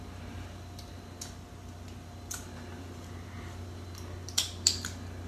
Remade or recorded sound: recorded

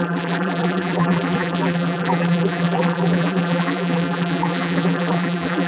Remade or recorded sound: remade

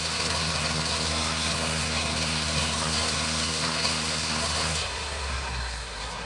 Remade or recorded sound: remade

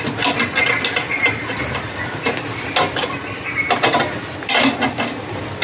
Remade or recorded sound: recorded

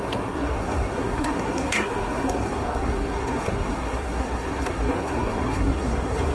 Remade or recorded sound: remade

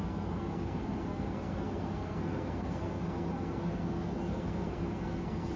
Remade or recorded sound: remade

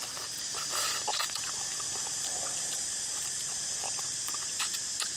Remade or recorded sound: remade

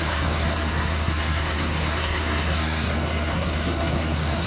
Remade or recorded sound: remade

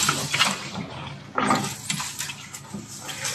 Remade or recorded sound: recorded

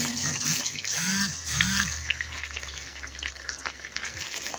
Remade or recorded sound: remade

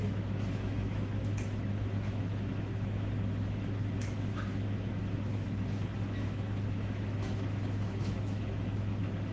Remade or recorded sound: remade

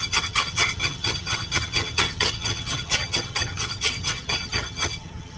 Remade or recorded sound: remade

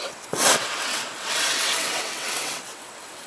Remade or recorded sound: remade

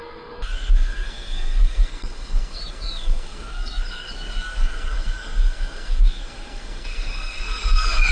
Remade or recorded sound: remade